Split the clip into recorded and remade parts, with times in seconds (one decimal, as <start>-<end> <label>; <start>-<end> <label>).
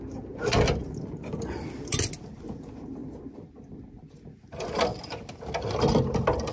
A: 0.0-6.5 recorded